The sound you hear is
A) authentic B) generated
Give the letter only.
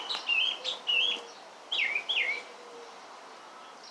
A